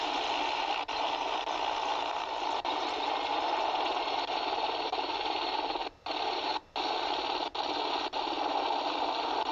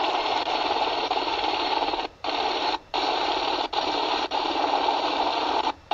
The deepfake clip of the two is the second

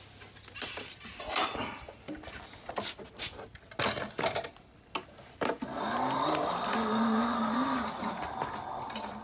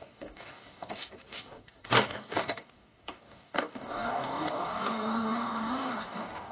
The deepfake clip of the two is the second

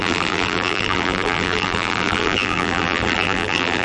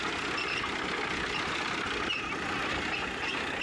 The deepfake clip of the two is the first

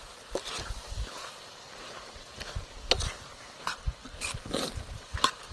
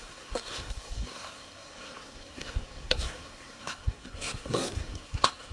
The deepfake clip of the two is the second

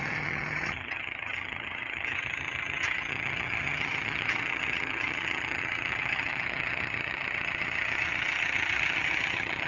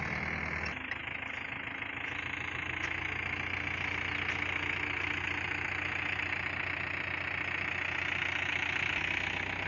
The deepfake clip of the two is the first